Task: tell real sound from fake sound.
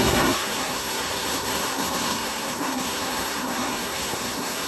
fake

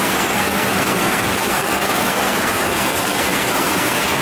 fake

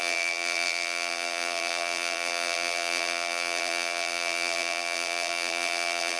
fake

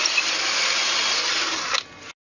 real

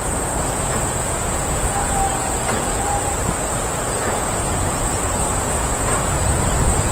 fake